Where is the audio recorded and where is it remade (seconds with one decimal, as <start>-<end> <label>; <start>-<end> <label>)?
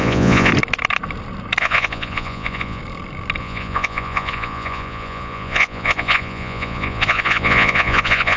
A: 0.0-0.5 remade; 0.5-1.6 recorded; 1.6-2.8 remade; 2.8-3.4 recorded; 3.4-8.4 remade